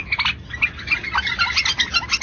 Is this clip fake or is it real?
real